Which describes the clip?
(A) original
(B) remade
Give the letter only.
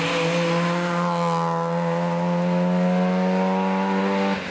A